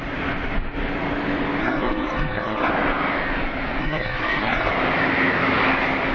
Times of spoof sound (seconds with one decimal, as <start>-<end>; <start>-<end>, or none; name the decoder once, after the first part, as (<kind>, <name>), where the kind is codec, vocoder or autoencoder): 1.6-2.7 (codec, SNAC); 3.8-4.7